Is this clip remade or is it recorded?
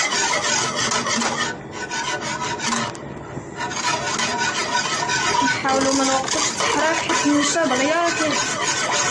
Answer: recorded